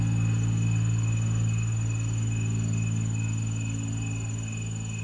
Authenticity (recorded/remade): recorded